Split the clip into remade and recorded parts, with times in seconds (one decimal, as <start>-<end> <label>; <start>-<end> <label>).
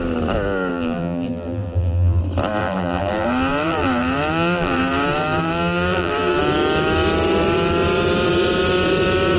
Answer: 0.0-0.7 recorded; 0.7-2.2 remade; 2.2-2.6 recorded; 2.6-6.4 remade; 6.4-9.4 recorded